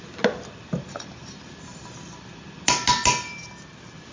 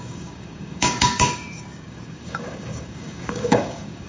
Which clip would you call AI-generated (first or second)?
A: second